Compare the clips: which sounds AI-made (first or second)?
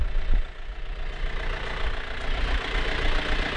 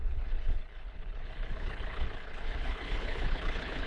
second